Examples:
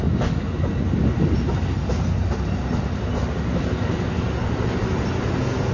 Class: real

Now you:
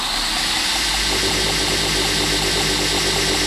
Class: real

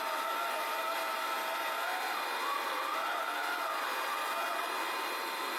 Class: real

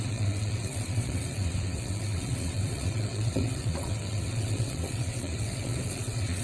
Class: fake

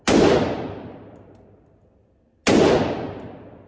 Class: real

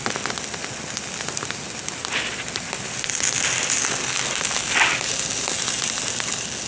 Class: real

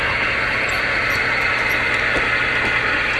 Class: real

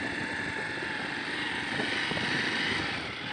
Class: real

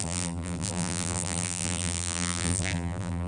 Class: fake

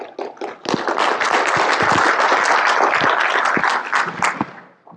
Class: real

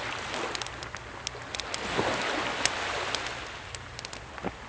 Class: real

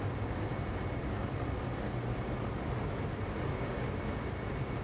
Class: real